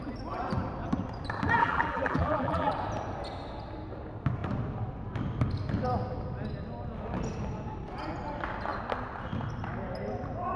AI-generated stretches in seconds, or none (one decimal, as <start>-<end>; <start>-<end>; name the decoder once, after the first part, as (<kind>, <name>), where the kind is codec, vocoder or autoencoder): 1.6-2.7 (vocoder, BigVGAN v2)